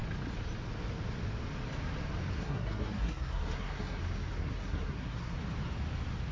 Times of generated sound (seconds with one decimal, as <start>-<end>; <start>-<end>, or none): 2.3-4.0; 4.4-5.4